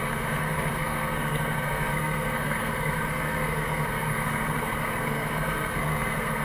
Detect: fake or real fake